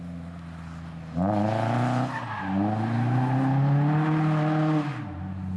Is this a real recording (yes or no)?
yes